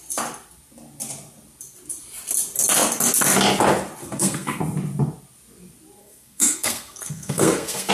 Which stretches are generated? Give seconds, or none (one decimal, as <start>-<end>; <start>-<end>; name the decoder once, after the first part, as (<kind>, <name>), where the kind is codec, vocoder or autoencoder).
4.0-4.6 (codec, SNAC); 6.0-7.9